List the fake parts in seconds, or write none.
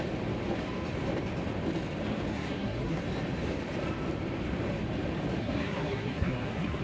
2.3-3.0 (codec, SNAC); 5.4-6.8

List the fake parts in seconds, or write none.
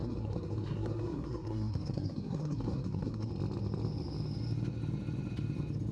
0.0-3.3 (codec, SNAC)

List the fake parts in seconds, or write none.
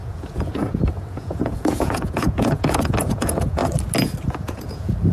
0.0-3.6 (vocoder, Vocos); 4.2-5.1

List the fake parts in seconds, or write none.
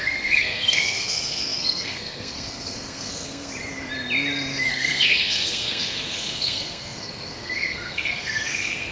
0.0-3.5 (codec, SNAC); 4.7-8.9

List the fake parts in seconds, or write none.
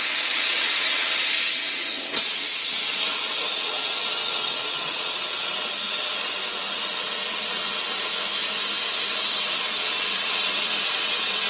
0.0-8.3 (vocoder, WaveNeXt); 9.4-11.5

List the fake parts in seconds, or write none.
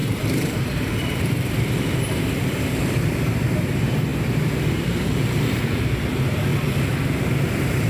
0.0-6.5 (vocoder, BigVGAN v2); 7.2-7.9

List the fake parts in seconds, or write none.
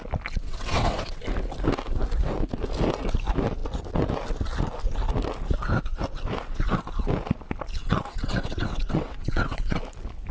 0.4-1.2 (vocoder, WaveNeXt); 7.8-9.8